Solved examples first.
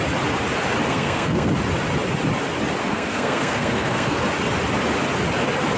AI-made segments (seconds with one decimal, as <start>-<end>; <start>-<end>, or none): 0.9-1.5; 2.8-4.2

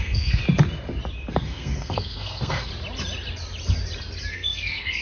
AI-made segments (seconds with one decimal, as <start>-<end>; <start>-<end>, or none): 0.0-0.4; 1.3-2.7; 4.3-5.0

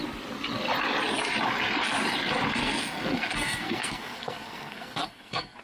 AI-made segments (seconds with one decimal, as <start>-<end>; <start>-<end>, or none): 2.5-5.6